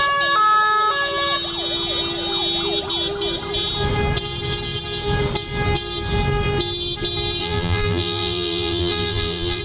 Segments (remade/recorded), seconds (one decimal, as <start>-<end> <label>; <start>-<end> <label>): 0.0-7.4 recorded; 7.4-9.6 remade

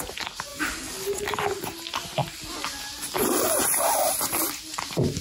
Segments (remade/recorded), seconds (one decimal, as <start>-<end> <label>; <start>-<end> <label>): 0.0-2.2 recorded; 2.2-3.4 remade; 3.4-5.2 recorded

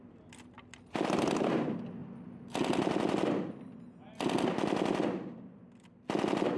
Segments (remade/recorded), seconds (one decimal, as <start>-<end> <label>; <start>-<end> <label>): 0.0-6.6 recorded

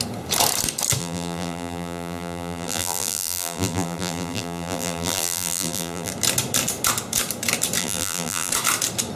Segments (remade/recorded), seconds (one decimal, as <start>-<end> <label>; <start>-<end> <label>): 0.0-1.0 recorded; 1.0-6.1 remade; 6.1-7.8 recorded; 7.8-8.5 remade; 8.5-9.2 recorded